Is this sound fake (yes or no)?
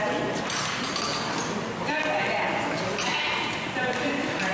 no